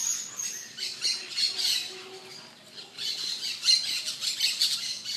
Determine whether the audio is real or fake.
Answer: real